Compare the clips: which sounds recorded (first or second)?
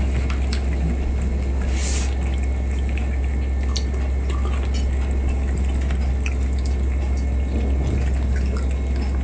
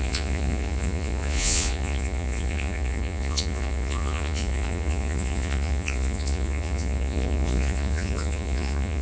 first